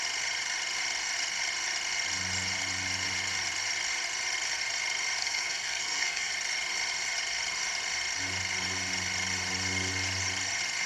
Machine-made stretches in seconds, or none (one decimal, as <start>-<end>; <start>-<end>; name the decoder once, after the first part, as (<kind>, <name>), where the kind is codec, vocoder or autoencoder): 5.2-6.3 (codec, SNAC)